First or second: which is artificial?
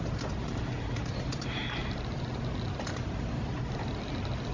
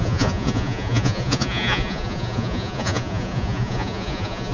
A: second